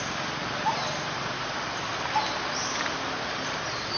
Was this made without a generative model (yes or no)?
yes